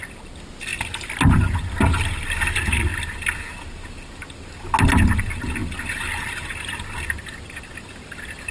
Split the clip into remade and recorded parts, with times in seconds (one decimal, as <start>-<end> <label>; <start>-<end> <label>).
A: 0.0-8.5 recorded